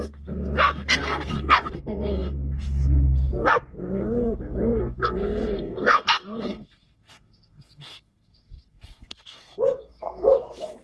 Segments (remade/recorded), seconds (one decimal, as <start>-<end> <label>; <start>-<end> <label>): 0.0-10.8 remade